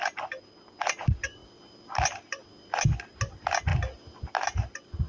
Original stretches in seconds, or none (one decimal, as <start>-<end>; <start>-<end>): 0.0-5.1